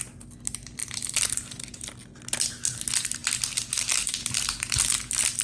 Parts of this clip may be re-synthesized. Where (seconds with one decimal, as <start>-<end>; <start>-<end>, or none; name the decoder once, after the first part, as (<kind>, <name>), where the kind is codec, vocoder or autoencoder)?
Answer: none